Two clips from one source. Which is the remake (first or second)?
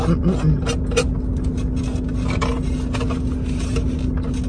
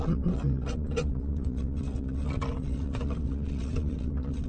second